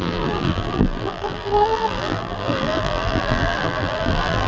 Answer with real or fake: fake